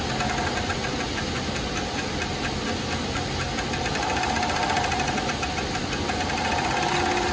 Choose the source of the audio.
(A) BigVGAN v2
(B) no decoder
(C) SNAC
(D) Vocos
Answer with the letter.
B